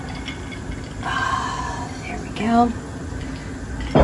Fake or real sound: real